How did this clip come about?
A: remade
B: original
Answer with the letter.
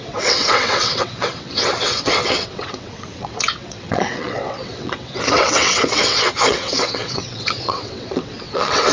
A